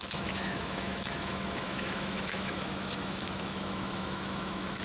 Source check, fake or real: fake